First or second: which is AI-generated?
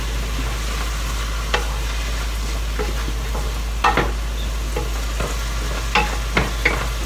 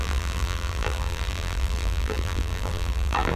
second